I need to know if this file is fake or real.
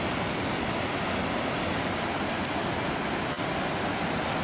real